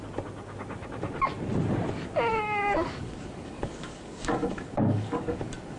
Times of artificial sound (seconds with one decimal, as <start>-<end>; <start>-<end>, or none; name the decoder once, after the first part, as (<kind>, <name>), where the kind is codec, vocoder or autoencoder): 2.3-5.8 (codec, DAC)